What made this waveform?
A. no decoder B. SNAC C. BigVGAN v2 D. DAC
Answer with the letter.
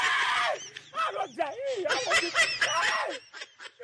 A